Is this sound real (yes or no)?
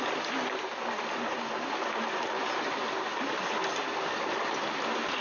yes